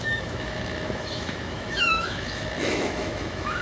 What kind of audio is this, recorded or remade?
remade